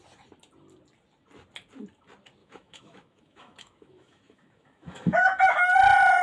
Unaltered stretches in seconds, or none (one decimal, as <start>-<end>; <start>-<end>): 0.0-2.4; 5.4-6.2